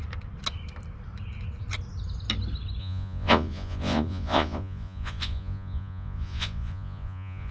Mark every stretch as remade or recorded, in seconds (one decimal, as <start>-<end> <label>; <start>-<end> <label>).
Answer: 0.0-2.8 recorded; 2.8-7.5 remade